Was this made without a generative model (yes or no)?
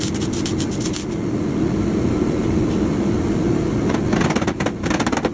yes